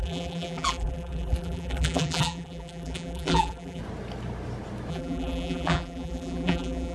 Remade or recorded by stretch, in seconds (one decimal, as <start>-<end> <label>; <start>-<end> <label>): 0.0-3.8 remade; 3.8-4.9 recorded; 4.9-6.9 remade